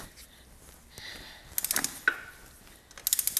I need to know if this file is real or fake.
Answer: real